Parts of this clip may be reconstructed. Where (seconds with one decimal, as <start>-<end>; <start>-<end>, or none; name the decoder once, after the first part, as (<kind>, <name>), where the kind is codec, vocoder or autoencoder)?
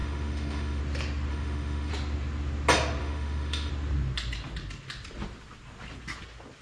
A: 0.0-0.8 (autoencoder, DAC-VAE); 1.3-1.9; 3.0-3.7